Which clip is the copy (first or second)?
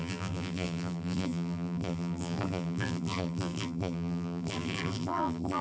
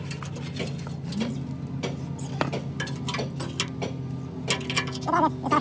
first